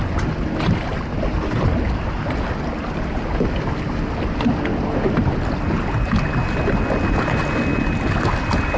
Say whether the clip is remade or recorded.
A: recorded